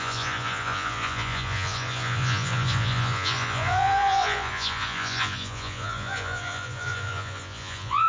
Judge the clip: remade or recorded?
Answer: remade